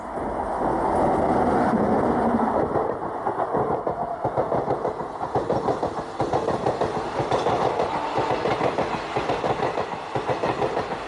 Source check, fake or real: real